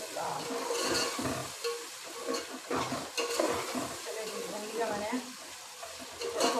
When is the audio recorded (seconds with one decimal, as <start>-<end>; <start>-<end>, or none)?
0.0-6.6